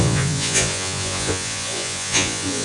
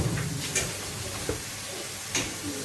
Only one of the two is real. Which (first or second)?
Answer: second